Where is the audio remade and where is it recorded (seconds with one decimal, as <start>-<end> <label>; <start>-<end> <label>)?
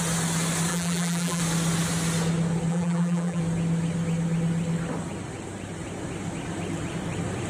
0.0-0.7 recorded; 0.7-1.4 remade; 1.4-2.7 recorded; 2.7-3.4 remade; 3.4-7.5 recorded